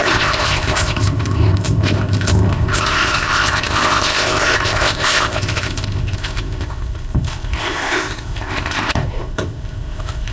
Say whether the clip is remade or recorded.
remade